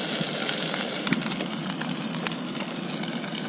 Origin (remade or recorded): recorded